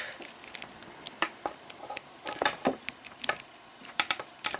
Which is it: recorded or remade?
remade